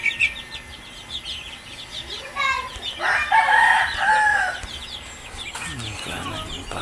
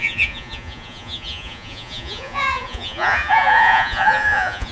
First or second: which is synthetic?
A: second